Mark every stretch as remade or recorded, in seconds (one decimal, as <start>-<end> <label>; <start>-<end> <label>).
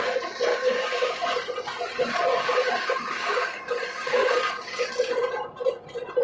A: 0.0-0.5 recorded; 0.5-1.2 remade; 1.2-2.3 recorded; 2.3-4.9 remade; 4.9-6.2 recorded